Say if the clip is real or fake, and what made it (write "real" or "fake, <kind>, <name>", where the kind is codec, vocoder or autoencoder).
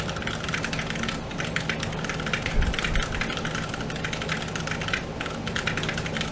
real